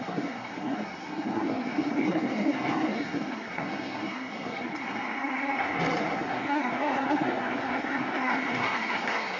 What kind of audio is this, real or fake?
fake